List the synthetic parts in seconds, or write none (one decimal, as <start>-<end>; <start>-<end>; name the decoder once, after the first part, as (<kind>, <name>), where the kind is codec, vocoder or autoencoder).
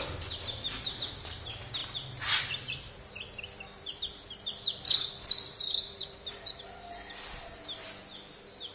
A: 1.8-6.9 (vocoder, BigVGAN v2)